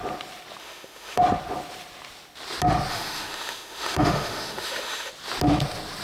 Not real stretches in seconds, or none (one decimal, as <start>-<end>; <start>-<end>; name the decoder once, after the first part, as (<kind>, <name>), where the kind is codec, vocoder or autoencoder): 0.6-1.2 (autoencoder, DAC-VAE); 2.9-5.1